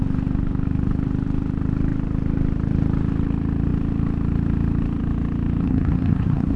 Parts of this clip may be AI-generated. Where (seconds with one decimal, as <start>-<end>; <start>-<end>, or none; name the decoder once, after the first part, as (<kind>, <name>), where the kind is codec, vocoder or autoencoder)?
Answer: 5.6-6.6 (codec, SNAC)